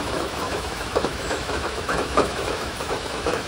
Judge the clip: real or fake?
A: fake